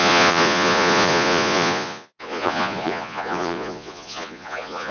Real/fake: fake